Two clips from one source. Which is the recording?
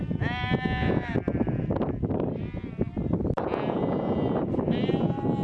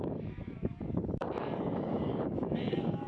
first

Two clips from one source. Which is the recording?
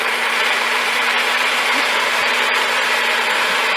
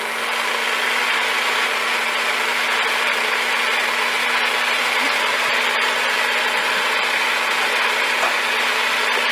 second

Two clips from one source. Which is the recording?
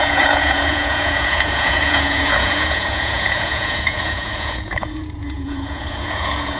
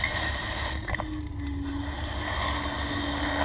second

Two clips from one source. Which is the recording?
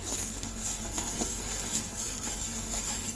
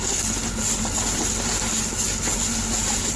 second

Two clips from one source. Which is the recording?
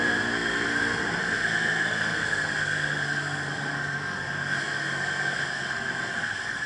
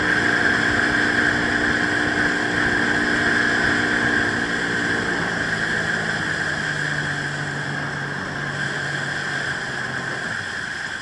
second